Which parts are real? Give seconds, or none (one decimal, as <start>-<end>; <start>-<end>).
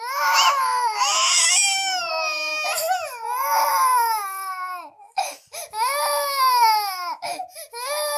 2.5-3.7